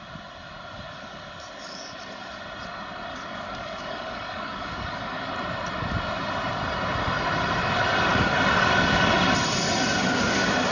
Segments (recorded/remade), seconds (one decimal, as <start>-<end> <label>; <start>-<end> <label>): 0.0-3.1 recorded; 3.1-5.3 remade; 5.3-8.1 recorded; 8.1-8.7 remade; 8.7-10.7 recorded